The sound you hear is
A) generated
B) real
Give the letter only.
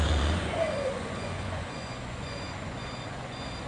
A